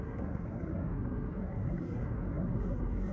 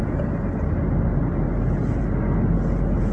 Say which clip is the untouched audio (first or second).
second